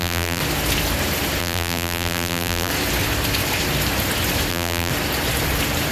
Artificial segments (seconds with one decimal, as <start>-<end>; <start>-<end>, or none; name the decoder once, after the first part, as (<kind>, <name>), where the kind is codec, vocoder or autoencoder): 0.0-0.4 (vocoder, BigVGAN v2); 1.4-2.7; 4.5-4.9

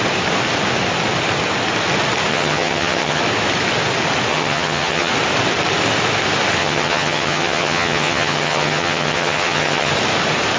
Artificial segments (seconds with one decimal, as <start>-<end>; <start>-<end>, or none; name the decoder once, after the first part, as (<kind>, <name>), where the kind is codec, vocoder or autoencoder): 2.3-3.2 (vocoder, HiFi-GAN); 4.3-5.1; 6.6-9.9

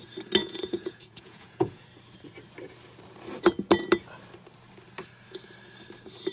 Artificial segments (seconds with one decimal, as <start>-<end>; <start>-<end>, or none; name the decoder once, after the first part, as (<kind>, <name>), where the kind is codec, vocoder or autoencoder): 0.4-1.8 (vocoder, Vocos)

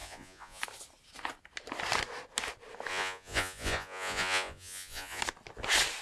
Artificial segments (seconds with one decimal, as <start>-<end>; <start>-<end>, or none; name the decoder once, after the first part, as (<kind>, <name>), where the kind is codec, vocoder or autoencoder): 0.0-0.6 (vocoder, Vocos); 2.9-5.2

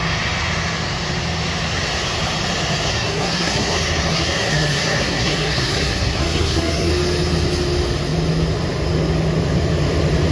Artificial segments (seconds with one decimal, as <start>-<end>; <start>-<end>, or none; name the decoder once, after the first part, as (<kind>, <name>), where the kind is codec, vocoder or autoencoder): 2.9-6.9 (codec, SNAC)

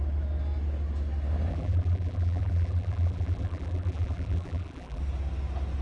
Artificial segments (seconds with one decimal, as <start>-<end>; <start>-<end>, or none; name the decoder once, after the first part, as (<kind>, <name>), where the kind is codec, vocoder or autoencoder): 1.5-5.0 (vocoder, BigVGAN v2)

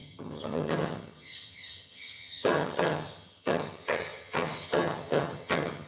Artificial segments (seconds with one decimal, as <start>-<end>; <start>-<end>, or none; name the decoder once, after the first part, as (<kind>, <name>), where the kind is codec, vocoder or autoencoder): 0.0-5.9 (vocoder, HiFi-GAN)